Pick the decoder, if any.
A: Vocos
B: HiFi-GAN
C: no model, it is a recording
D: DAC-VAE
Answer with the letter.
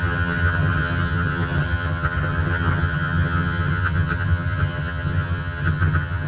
B